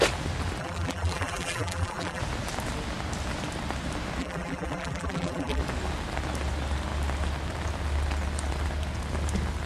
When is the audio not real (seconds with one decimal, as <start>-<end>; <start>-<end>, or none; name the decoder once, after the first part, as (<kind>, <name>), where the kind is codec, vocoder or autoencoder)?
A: 0.6-2.2 (vocoder, BigVGAN v2); 4.2-5.6